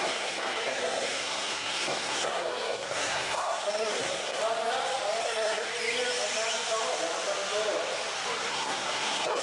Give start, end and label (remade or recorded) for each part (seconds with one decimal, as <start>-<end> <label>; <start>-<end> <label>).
0.0-4.4 remade; 4.4-5.2 recorded; 5.2-5.7 remade; 5.7-8.5 recorded; 8.5-9.4 remade